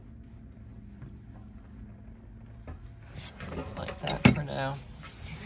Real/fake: real